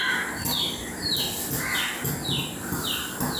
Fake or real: real